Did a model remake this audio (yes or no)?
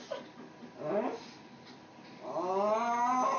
no